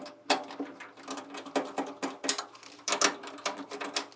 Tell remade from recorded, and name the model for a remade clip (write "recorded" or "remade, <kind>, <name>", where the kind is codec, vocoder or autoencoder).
recorded